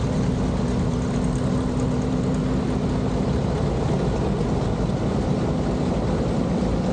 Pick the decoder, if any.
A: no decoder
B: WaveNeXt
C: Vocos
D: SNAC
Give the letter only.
A